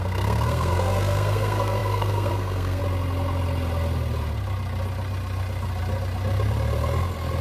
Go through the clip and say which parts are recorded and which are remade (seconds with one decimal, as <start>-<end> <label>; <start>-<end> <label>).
0.0-2.8 remade; 2.8-7.4 recorded